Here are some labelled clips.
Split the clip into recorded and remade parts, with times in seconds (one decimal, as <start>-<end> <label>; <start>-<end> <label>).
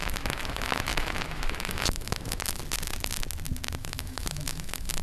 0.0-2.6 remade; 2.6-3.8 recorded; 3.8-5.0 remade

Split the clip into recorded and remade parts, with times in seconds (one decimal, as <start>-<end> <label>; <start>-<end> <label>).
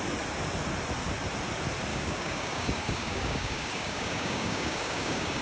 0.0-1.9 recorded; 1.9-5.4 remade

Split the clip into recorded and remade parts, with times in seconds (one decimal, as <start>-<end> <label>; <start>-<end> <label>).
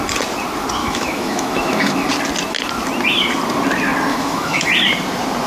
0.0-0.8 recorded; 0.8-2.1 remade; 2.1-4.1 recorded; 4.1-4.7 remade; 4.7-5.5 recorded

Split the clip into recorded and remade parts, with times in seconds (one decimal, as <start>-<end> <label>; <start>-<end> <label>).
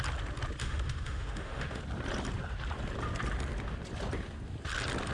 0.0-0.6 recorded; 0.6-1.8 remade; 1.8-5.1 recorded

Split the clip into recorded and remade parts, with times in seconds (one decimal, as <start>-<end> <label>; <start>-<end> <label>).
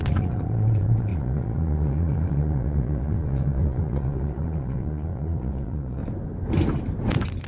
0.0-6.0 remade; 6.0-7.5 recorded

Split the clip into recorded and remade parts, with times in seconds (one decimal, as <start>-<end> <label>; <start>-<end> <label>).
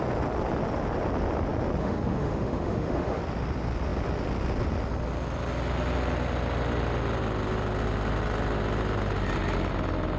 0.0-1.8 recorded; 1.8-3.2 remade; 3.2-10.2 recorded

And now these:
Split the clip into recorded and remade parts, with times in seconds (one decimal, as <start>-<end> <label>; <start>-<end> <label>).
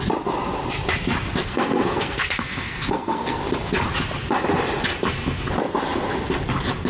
0.0-1.4 recorded; 1.4-3.4 remade; 3.4-6.9 recorded